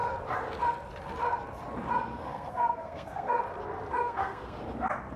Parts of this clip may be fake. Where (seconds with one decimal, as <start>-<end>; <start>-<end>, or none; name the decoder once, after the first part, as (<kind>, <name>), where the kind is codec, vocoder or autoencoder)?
2.3-3.4 (codec, SNAC); 4.0-4.6